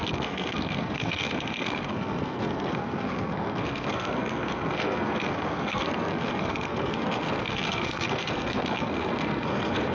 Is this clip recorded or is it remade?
remade